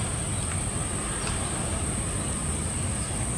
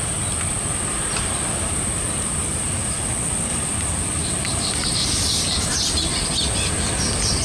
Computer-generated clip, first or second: second